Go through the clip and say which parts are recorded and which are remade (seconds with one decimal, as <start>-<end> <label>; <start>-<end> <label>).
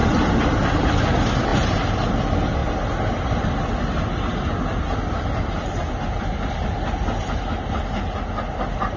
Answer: 0.0-9.0 recorded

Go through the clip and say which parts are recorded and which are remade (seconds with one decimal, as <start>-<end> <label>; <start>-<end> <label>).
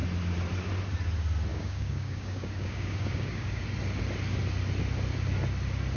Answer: 0.0-1.5 recorded; 1.5-3.6 remade; 3.6-6.0 recorded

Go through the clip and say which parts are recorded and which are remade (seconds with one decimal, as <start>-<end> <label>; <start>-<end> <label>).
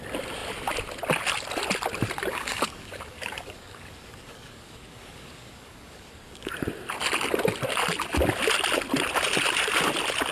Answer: 0.0-2.3 recorded; 2.3-6.5 remade; 6.5-10.3 recorded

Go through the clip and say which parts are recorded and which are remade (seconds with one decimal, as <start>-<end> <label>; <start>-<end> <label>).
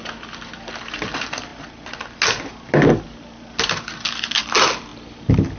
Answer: 0.0-5.6 recorded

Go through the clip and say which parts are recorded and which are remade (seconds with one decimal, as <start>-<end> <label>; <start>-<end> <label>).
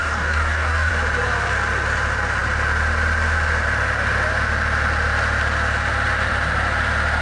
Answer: 0.0-0.9 remade; 0.9-7.2 recorded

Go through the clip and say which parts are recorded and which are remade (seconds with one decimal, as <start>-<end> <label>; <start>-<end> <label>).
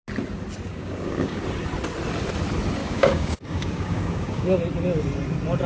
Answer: 0.0-0.7 recorded; 0.7-1.4 remade; 1.4-2.8 recorded; 2.8-4.6 remade; 4.6-5.7 recorded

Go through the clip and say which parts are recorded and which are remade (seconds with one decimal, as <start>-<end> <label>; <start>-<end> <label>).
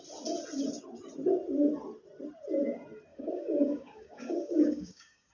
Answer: 0.0-3.1 recorded; 3.1-5.3 remade